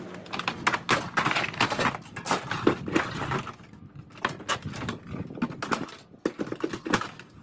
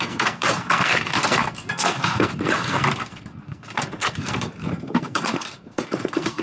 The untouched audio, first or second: first